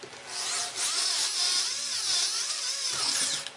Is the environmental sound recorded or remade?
recorded